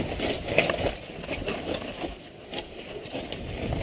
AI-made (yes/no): no